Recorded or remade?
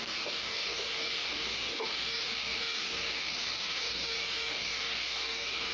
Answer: remade